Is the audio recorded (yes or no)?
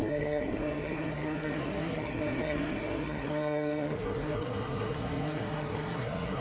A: no